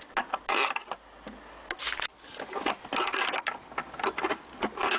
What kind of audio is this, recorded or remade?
recorded